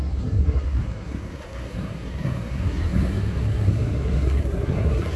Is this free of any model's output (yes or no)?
no